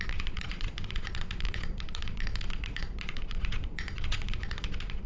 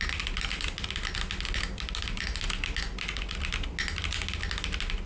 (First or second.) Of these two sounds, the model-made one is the first